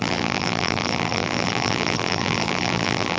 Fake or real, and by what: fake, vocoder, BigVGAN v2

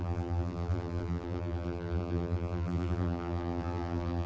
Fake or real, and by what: fake, vocoder, BigVGAN v2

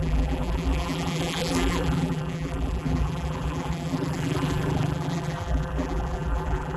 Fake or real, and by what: fake, vocoder, BigVGAN v2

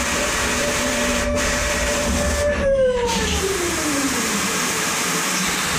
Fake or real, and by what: fake, vocoder, BigVGAN v2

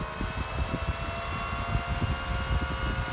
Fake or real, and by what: real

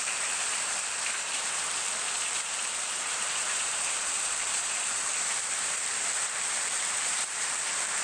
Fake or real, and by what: fake, vocoder, BigVGAN v2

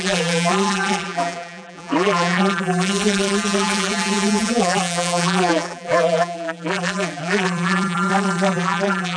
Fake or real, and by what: fake, vocoder, BigVGAN v2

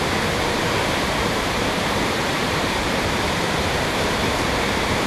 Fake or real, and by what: fake, vocoder, BigVGAN v2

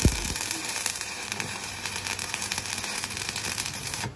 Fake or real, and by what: fake, vocoder, BigVGAN v2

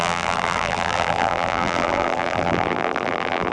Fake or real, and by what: fake, vocoder, BigVGAN v2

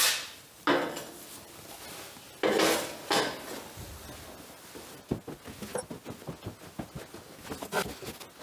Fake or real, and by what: real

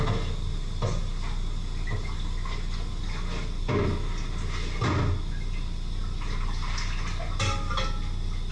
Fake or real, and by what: real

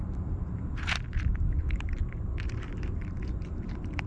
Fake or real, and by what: fake, vocoder, BigVGAN v2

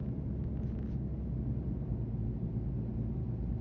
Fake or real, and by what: real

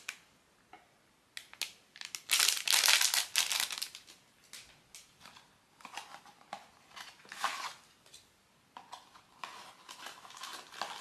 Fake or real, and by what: real